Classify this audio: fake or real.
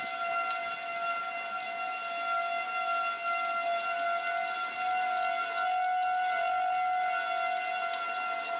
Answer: real